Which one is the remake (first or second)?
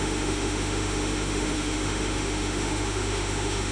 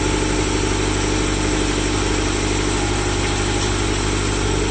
first